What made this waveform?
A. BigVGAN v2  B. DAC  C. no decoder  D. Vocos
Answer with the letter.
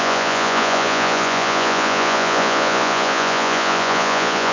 D